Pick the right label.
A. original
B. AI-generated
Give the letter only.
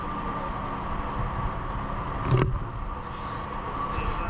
A